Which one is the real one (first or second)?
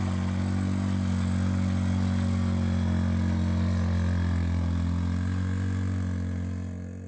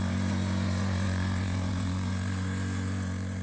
first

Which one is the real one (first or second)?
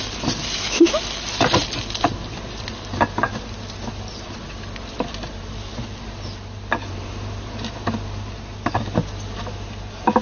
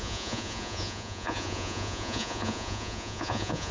first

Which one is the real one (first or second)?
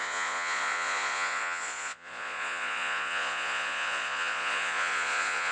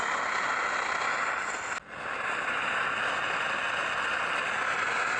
second